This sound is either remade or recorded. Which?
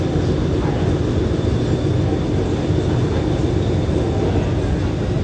recorded